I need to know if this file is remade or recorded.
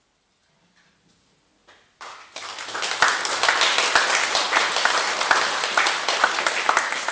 recorded